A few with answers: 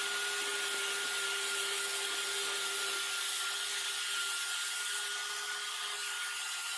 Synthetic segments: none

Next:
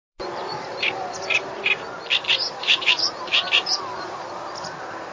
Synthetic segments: 0.0-1.6 (vocoder, BigVGAN v2); 2.5-4.3

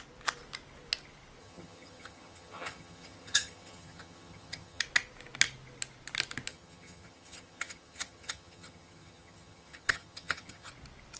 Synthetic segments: 1.4-4.8 (vocoder, HiFi-GAN); 6.5-10.7

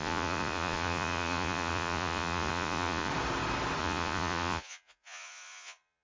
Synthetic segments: 0.0-3.1 (vocoder, Vocos); 3.8-6.0

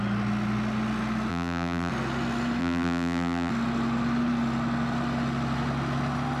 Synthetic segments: 1.3-1.9 (vocoder, BigVGAN v2); 2.6-3.5

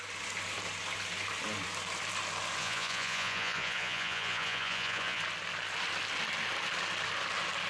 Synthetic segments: 2.6-5.2 (vocoder, Vocos)

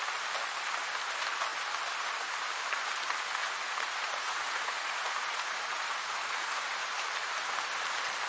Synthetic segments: 3.4-6.8 (vocoder, Vocos)